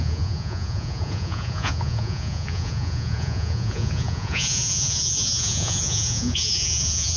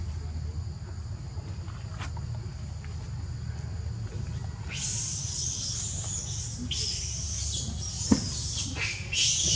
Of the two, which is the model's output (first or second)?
first